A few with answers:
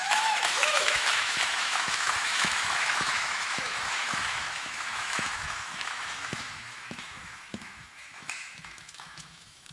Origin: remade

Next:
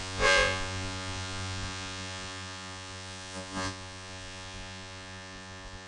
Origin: remade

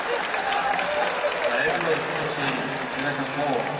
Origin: recorded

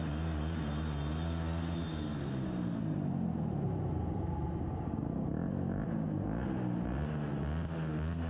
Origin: recorded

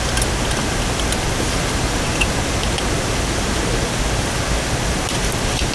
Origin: recorded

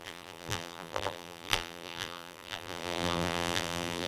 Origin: remade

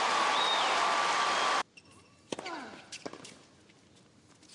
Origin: recorded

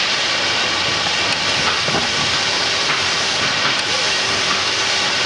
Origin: remade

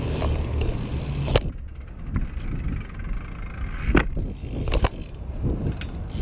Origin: recorded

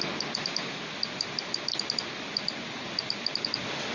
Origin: recorded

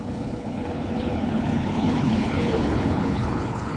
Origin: remade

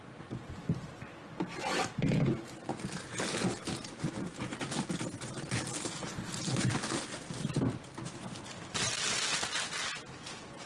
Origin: recorded